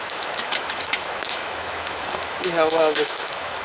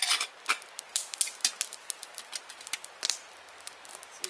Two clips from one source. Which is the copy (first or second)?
first